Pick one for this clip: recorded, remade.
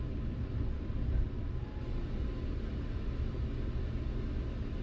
recorded